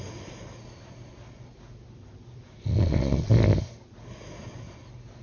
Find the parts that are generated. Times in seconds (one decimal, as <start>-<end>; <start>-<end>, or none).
2.8-3.3